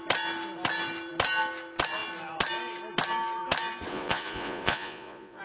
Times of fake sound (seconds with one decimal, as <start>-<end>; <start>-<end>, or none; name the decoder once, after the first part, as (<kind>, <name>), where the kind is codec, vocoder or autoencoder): 3.9-5.4 (vocoder, Vocos)